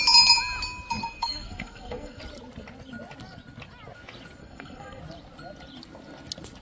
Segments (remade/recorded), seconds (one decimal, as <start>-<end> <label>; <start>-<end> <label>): 0.0-1.0 recorded; 1.0-2.2 remade; 2.2-4.4 recorded; 4.4-5.0 remade; 5.0-6.6 recorded